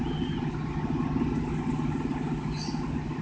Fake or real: real